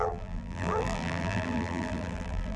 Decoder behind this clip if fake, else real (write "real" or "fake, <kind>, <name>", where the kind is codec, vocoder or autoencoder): fake, vocoder, BigVGAN v2